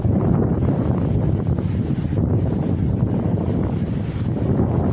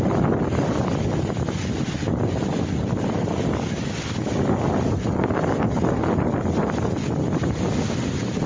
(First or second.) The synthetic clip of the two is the first